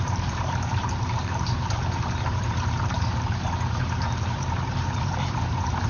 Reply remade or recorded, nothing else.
remade